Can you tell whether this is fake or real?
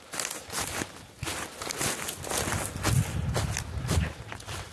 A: real